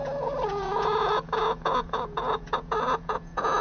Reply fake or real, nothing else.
fake